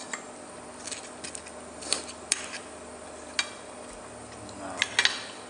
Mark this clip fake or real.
real